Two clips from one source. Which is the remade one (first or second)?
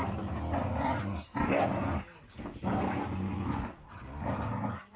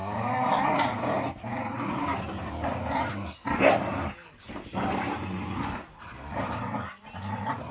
second